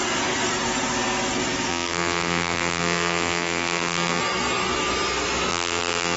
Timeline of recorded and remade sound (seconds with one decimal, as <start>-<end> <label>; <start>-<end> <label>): 0.0-1.7 recorded; 1.7-4.2 remade; 4.2-5.5 recorded; 5.5-6.2 remade